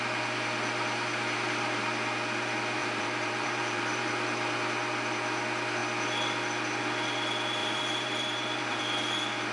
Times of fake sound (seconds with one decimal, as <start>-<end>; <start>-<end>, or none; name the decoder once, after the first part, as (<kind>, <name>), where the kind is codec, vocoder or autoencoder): 2.8-4.1 (vocoder, BigVGAN v2); 7.6-8.8